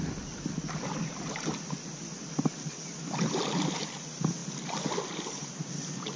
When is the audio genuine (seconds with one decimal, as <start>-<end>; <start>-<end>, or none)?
0.0-6.2